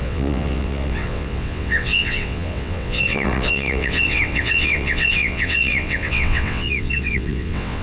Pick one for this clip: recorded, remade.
remade